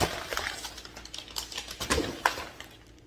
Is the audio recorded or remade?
recorded